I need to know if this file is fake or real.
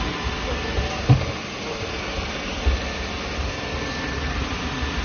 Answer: real